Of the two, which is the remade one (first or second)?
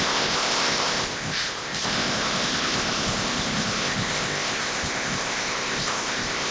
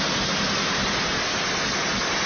first